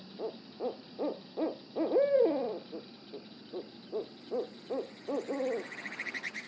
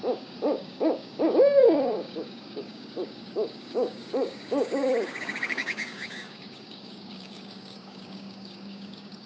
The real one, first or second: first